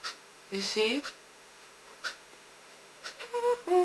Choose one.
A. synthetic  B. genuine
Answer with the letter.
A